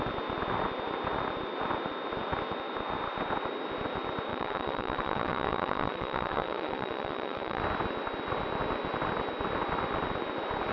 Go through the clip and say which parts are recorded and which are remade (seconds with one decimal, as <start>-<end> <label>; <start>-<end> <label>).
0.0-4.3 recorded; 4.3-7.6 remade; 7.6-10.7 recorded